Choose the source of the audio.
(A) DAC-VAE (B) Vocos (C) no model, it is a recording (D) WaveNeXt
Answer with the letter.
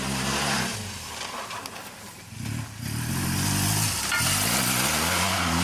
C